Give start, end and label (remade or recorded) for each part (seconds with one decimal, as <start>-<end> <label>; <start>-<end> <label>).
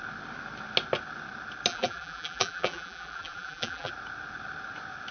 0.0-1.7 recorded; 1.7-3.9 remade; 3.9-5.1 recorded